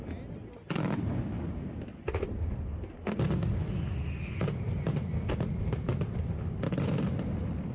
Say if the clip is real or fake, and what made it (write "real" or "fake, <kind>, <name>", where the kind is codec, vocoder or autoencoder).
real